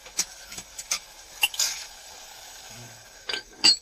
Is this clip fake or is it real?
fake